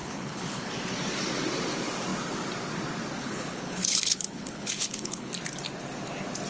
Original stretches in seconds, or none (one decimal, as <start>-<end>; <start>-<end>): 0.7-3.2; 5.3-6.5